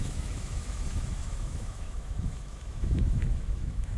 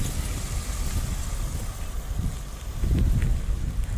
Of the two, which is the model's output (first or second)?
first